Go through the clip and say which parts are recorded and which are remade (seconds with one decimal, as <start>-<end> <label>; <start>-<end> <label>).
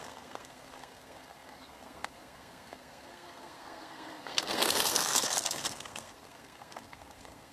0.0-7.5 remade